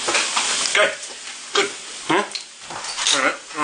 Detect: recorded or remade recorded